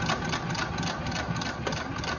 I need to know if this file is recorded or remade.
recorded